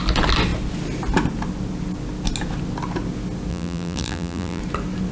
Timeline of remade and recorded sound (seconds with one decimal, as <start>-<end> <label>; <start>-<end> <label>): 0.0-3.5 recorded; 3.5-4.6 remade; 4.6-5.1 recorded